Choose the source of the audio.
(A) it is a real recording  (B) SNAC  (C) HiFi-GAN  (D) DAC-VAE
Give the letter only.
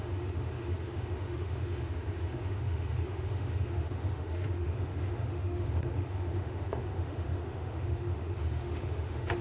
D